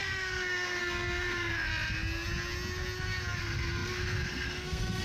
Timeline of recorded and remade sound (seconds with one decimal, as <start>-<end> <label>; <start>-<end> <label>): 0.0-1.7 remade; 1.7-3.4 recorded; 3.4-5.0 remade